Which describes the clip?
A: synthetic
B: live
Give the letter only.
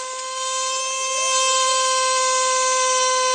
B